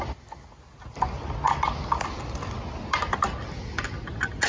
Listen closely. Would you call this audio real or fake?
real